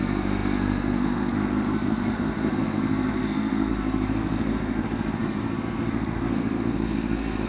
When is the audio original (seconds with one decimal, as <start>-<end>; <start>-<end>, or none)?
none